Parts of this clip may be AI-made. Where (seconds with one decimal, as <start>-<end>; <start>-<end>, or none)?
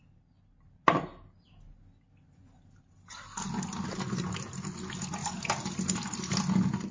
none